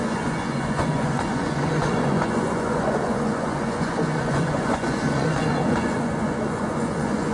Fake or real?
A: fake